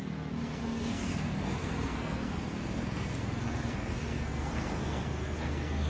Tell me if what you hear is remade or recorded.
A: remade